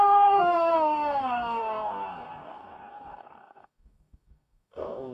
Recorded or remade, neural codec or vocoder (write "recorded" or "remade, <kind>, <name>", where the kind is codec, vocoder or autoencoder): remade, codec, DAC